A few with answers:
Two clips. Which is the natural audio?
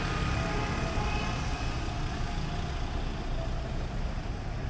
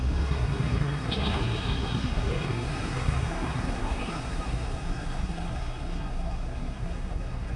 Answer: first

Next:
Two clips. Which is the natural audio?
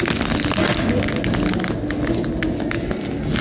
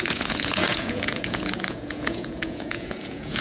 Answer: first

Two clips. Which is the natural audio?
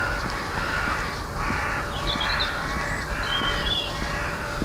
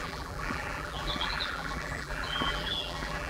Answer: first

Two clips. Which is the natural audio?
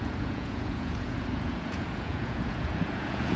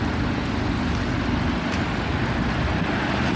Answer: second